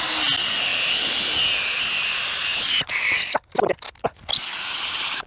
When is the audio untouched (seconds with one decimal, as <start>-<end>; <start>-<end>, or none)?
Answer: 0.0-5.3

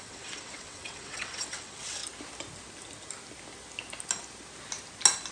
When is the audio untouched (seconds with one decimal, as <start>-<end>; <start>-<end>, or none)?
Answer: 2.0-5.3

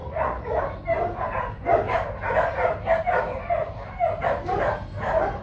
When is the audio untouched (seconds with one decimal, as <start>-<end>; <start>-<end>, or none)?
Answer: 0.6-5.4

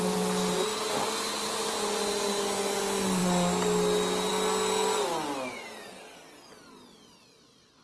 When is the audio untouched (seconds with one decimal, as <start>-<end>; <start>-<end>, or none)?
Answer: 0.0-7.8

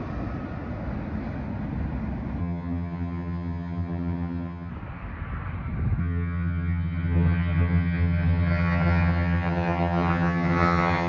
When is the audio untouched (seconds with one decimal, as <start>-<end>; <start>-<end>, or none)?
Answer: 0.0-2.4; 4.7-6.0

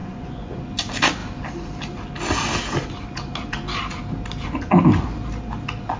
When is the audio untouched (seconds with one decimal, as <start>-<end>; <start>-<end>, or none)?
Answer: 0.7-6.0